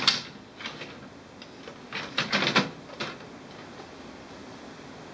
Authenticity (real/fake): real